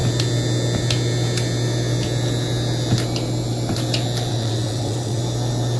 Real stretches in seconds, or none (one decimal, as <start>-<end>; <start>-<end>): 0.0-4.3; 5.2-5.8